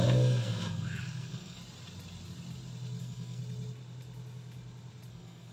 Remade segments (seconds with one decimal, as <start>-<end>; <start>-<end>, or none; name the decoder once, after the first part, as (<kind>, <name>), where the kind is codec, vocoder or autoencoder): 0.0-1.6 (codec, SNAC); 3.0-3.4; 5.1-5.5